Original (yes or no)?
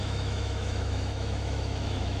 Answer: no